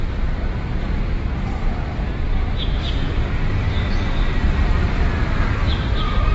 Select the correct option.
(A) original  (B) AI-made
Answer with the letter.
B